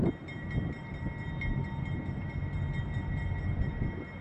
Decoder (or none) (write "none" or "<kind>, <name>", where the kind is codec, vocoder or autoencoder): none